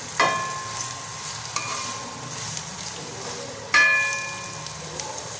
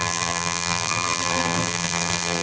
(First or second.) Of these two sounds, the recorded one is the first